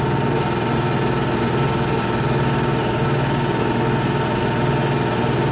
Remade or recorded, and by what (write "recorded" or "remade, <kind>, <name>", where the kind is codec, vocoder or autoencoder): recorded